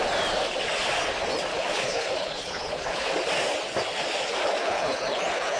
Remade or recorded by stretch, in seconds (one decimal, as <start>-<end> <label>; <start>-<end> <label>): 0.0-1.5 recorded; 1.5-3.1 remade; 3.1-4.6 recorded; 4.6-5.6 remade